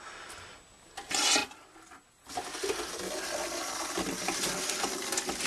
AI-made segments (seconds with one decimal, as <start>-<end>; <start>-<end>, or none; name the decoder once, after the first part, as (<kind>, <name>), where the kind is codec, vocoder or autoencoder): none